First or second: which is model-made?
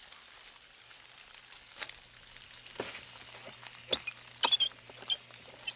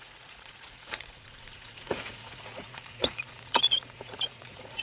second